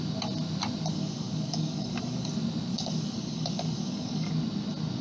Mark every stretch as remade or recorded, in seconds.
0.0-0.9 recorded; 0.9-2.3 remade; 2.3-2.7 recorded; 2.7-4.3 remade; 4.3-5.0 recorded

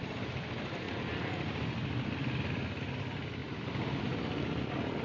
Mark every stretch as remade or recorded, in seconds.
0.0-5.0 remade

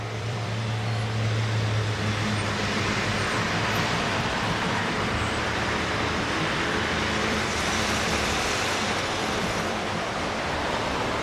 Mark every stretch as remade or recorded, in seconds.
0.0-0.6 remade; 0.6-3.7 recorded; 3.7-11.2 remade

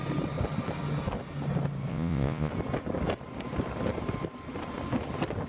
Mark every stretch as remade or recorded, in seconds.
0.0-1.9 recorded; 1.9-2.5 remade; 2.5-5.5 recorded

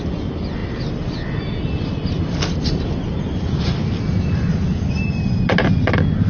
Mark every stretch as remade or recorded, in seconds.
0.0-6.3 recorded

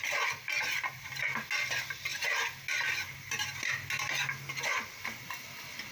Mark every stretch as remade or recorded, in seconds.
0.0-5.9 recorded